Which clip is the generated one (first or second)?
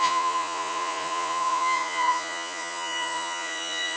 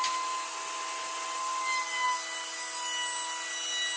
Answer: first